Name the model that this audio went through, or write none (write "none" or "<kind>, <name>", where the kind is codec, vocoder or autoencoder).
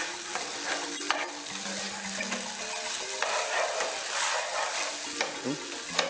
none